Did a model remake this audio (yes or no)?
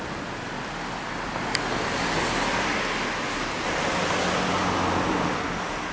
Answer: no